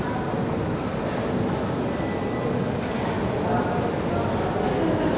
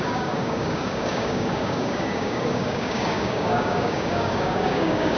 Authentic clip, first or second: first